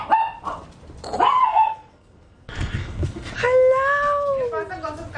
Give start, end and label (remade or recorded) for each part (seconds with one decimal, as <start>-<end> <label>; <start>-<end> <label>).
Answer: 0.0-1.4 recorded; 1.4-3.3 remade; 3.3-5.2 recorded